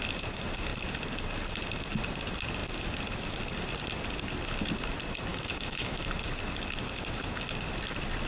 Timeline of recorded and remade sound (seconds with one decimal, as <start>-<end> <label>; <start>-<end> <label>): 0.0-5.3 recorded; 5.3-6.1 remade; 6.1-8.3 recorded